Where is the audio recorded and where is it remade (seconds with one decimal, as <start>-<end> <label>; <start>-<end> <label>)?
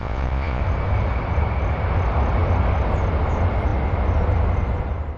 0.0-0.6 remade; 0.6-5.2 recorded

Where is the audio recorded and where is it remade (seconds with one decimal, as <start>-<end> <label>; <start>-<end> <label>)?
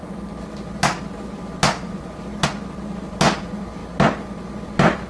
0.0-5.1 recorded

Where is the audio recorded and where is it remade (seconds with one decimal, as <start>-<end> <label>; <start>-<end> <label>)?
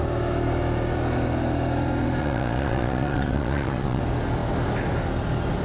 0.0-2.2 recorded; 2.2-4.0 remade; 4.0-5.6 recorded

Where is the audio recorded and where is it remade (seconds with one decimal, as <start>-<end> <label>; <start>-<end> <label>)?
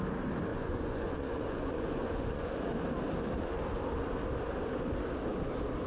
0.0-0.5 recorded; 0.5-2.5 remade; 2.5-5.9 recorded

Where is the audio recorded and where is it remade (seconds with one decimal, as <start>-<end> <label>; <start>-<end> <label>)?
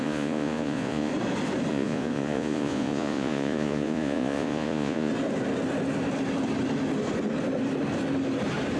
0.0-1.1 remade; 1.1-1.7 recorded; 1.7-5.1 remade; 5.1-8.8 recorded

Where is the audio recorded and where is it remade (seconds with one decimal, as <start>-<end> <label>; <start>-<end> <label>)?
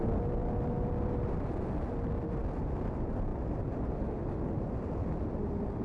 0.0-5.8 recorded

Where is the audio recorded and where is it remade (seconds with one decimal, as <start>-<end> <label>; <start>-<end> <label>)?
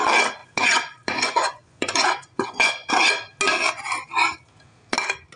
0.0-0.4 recorded; 0.4-2.9 remade; 2.9-5.4 recorded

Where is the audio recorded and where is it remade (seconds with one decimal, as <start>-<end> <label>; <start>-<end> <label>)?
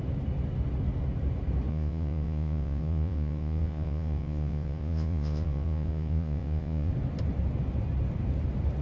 0.0-1.7 recorded; 1.7-6.9 remade; 6.9-8.8 recorded